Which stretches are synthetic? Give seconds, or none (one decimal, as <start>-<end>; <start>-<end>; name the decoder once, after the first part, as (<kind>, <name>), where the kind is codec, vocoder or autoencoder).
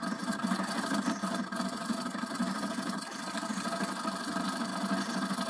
0.0-4.7 (vocoder, BigVGAN v2)